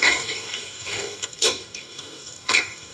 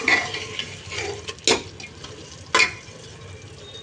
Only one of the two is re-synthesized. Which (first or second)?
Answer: first